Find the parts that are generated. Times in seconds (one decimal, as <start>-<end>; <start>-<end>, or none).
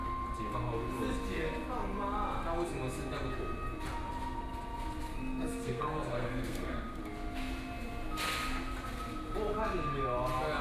5.0-7.0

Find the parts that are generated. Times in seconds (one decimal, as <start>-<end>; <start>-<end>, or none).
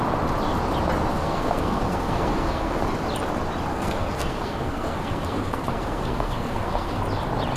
1.1-2.8; 3.7-7.0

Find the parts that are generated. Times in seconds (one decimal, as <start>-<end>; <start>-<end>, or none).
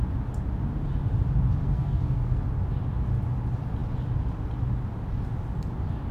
1.6-2.4